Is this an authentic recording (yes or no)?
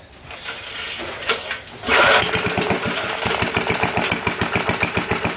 yes